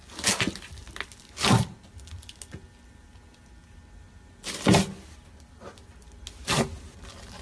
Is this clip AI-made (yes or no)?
no